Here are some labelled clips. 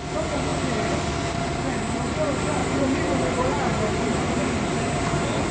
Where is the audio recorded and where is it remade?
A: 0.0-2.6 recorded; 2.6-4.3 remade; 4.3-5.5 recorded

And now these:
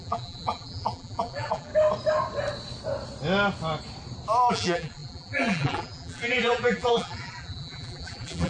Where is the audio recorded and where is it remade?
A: 0.0-1.7 remade; 1.7-4.5 recorded; 4.5-8.5 remade

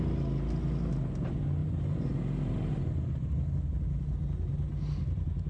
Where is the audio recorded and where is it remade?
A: 0.0-1.6 recorded; 1.6-2.2 remade; 2.2-4.5 recorded; 4.5-5.5 remade